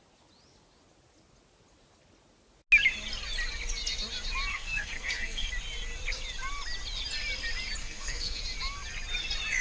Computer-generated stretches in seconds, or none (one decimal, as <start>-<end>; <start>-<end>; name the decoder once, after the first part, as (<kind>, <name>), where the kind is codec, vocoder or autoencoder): 4.5-5.5 (codec, SNAC); 7.8-8.4